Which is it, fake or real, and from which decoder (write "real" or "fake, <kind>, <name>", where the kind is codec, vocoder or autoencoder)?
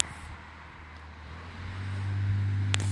real